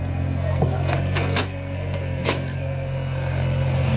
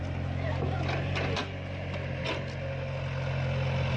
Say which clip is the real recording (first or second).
second